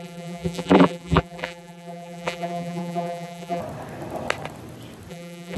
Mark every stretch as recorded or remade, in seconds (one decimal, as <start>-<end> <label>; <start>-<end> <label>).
0.0-3.6 remade; 3.6-5.1 recorded; 5.1-5.6 remade